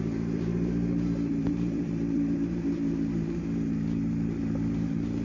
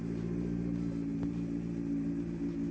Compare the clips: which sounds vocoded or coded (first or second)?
first